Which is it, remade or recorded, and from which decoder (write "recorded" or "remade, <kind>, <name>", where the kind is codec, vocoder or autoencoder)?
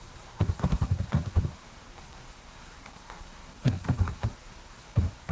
remade, codec, SNAC